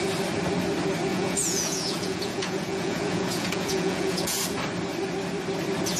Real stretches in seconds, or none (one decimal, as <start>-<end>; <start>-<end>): 0.0-1.1; 4.4-6.0

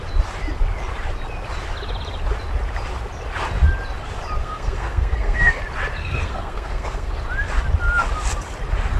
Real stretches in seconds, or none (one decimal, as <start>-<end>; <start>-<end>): 0.0-4.4; 5.6-6.0; 7.1-9.0

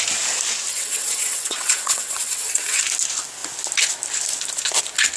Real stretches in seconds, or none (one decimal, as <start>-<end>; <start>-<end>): 0.0-0.7; 2.8-5.2